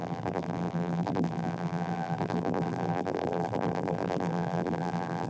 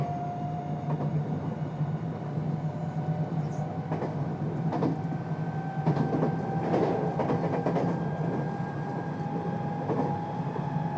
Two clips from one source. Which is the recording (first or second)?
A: second